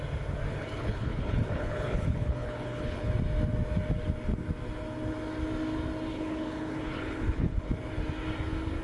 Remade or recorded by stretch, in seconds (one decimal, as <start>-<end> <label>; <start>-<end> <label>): 0.0-0.5 recorded; 0.5-3.1 remade; 3.1-6.1 recorded; 6.1-7.7 remade; 7.7-8.8 recorded